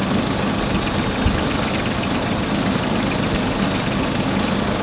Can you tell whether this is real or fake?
real